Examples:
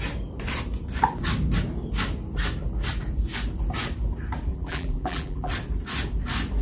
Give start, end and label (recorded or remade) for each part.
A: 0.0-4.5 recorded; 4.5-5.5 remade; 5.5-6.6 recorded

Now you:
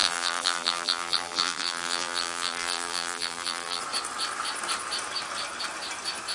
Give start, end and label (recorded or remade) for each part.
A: 0.0-3.8 remade; 3.8-6.3 recorded

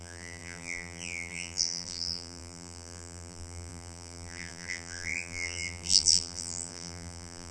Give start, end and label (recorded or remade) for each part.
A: 0.0-7.5 remade

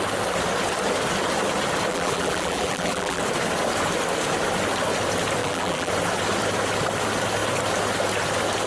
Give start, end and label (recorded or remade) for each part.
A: 0.0-1.9 recorded; 1.9-3.2 remade; 3.2-5.4 recorded; 5.4-5.9 remade; 5.9-8.7 recorded

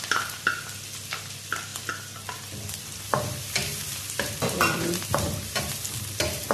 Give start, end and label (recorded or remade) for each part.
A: 0.0-1.7 recorded; 1.7-5.6 remade; 5.6-6.5 recorded

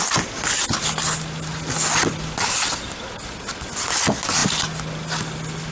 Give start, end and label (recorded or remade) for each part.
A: 0.0-5.7 recorded

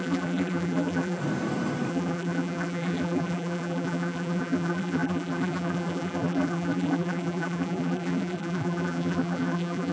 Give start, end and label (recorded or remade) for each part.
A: 0.0-1.2 remade; 1.2-1.9 recorded; 1.9-9.9 remade